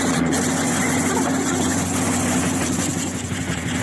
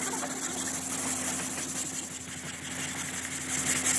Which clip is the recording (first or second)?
second